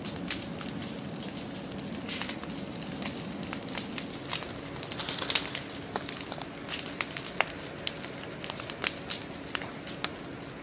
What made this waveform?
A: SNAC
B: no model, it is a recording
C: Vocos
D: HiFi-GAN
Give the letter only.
B